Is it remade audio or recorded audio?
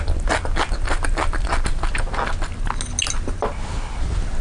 recorded